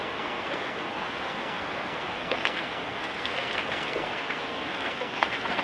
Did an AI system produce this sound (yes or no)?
yes